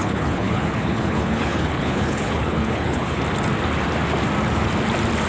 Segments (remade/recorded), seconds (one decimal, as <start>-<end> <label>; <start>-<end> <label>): 0.0-3.2 remade; 3.2-5.3 recorded